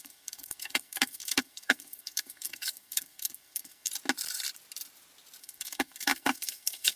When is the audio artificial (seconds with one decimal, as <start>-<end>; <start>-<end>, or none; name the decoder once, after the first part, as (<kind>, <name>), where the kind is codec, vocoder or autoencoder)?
0.0-3.9 (codec, SNAC); 5.4-7.0